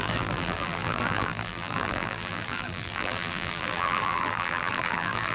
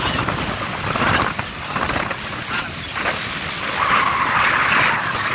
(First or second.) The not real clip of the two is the first